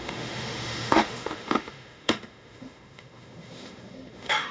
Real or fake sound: fake